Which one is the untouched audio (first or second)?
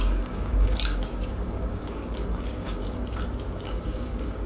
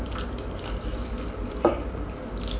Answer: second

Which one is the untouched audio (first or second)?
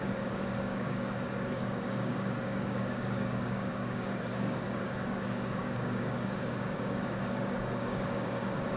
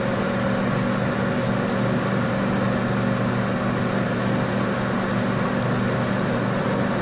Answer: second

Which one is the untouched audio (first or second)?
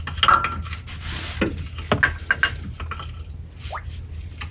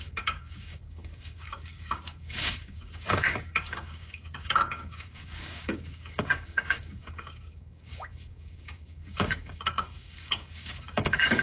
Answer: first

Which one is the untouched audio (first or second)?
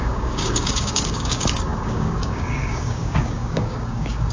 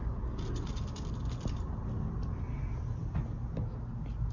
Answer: second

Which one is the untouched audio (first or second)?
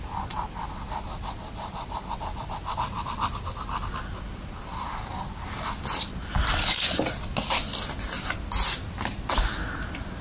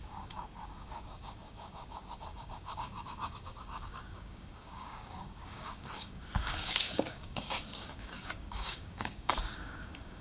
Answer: first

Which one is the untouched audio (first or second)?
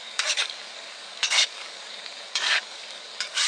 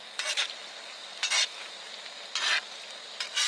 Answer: second